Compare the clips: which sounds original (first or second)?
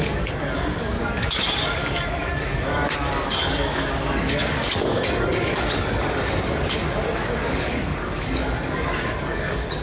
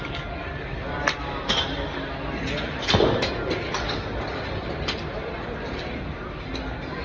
second